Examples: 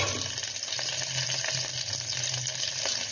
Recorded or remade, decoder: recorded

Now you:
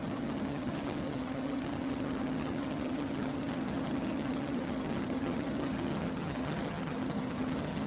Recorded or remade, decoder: remade, vocoder, HiFi-GAN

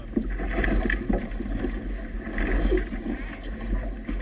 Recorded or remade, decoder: recorded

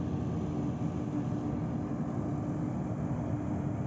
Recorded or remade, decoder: recorded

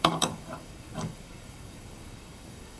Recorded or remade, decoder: remade, codec, DAC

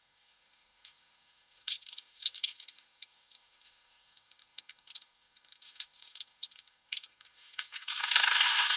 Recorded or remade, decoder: remade, codec, SNAC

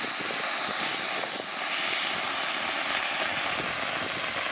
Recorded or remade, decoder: recorded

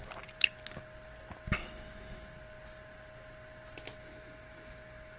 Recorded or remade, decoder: recorded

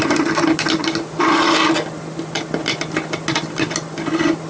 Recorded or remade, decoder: recorded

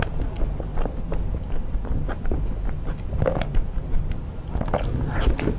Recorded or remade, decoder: recorded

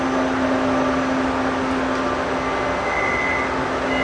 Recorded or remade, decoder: recorded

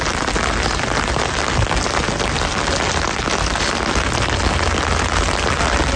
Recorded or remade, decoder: recorded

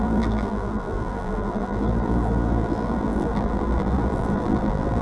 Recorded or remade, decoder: remade, vocoder, BigVGAN v2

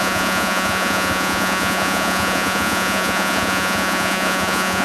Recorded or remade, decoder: remade, vocoder, Vocos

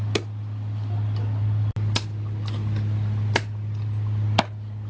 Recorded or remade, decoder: recorded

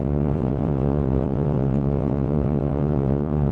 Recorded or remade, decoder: remade, vocoder, WaveNeXt